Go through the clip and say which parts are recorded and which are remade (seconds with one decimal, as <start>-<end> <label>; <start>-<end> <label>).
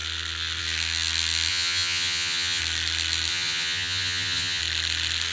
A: 0.0-1.5 recorded; 1.5-2.6 remade; 2.6-3.3 recorded; 3.3-4.6 remade; 4.6-5.3 recorded